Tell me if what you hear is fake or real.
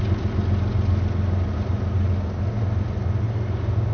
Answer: real